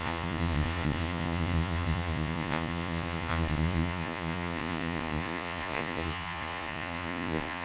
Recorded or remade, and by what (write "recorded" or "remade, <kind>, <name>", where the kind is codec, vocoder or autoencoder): remade, vocoder, Vocos